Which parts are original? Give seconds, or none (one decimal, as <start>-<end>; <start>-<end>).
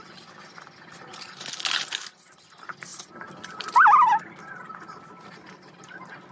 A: 0.0-6.3